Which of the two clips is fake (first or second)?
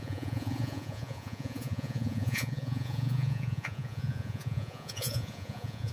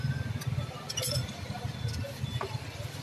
first